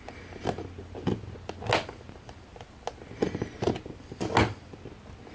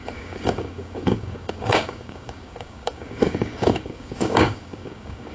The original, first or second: first